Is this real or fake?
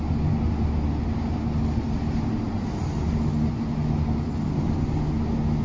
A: real